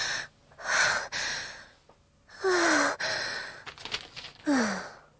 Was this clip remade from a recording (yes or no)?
no